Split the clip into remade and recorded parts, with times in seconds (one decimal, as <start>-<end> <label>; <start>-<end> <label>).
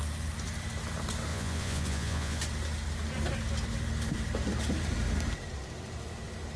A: 0.0-1.3 recorded; 1.3-2.4 remade; 2.4-6.6 recorded